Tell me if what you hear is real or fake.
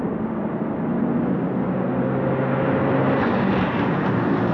real